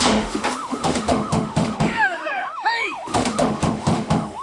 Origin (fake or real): fake